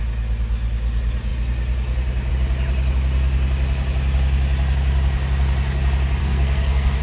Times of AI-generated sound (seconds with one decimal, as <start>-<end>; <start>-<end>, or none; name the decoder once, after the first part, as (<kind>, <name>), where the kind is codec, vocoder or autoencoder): 6.2-7.0 (codec, SNAC)